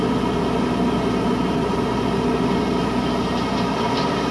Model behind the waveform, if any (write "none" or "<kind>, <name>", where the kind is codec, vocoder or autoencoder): none